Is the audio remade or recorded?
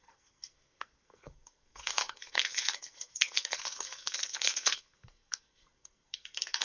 remade